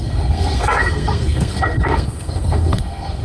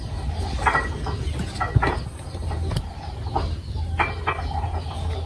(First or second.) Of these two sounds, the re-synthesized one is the first